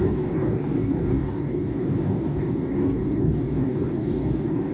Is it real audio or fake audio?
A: fake